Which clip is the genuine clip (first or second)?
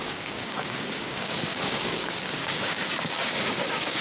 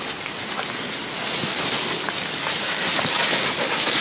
second